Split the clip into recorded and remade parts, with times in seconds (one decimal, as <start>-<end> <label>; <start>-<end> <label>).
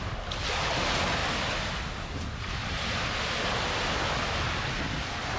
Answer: 0.0-5.4 recorded